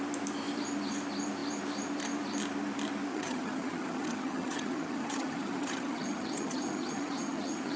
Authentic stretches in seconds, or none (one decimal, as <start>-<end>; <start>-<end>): 0.0-3.1